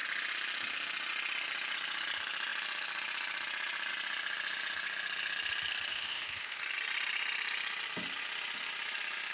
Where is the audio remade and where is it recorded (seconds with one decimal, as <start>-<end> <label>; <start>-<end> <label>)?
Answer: 0.0-5.9 recorded; 5.9-6.6 remade; 6.6-9.3 recorded

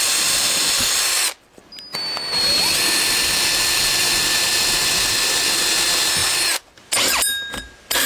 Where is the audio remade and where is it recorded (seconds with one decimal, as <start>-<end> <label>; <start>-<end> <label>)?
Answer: 0.0-8.1 recorded

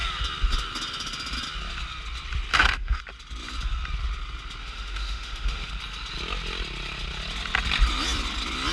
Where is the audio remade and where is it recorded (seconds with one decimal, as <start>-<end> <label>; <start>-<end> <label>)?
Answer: 0.0-2.5 recorded; 2.5-3.0 remade; 3.0-4.6 recorded; 4.6-5.7 remade; 5.7-8.7 recorded

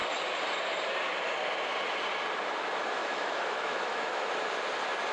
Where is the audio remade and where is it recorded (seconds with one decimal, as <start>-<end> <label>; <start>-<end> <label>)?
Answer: 0.0-3.0 recorded; 3.0-4.3 remade; 4.3-5.1 recorded

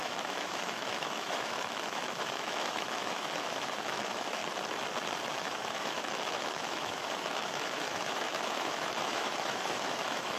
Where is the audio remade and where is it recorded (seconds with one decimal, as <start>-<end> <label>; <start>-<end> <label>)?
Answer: 0.0-4.4 remade; 4.4-5.3 recorded; 5.3-10.4 remade

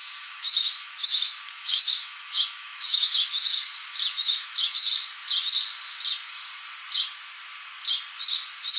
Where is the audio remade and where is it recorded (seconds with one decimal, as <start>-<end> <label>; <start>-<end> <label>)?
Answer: 0.0-4.9 remade; 4.9-8.8 recorded